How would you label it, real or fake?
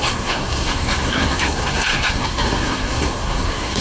fake